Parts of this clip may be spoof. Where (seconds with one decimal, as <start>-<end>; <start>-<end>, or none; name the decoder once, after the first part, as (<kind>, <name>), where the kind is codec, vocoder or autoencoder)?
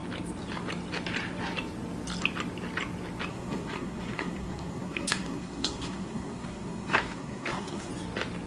3.3-7.9 (codec, SNAC)